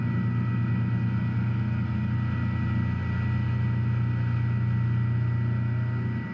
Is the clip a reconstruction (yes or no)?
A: no